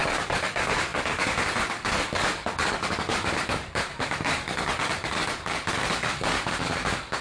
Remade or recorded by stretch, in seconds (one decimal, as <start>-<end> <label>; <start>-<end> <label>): 0.0-7.2 remade